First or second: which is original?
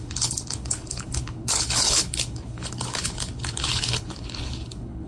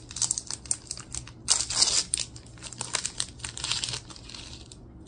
second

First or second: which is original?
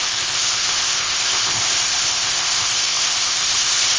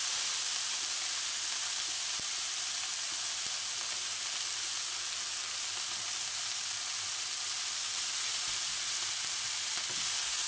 second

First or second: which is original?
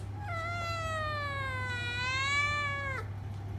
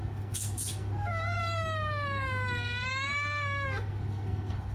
first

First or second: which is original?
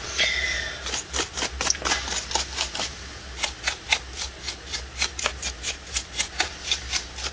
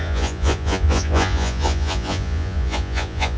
first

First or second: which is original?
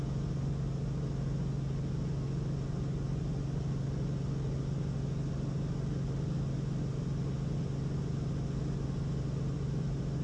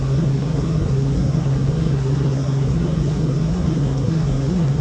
first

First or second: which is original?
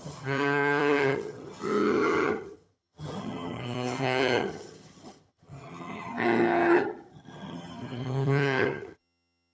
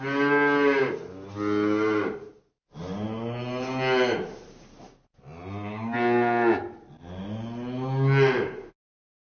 second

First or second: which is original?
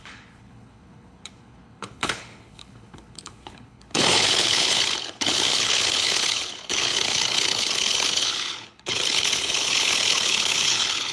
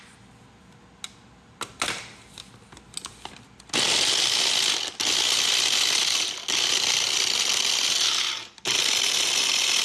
second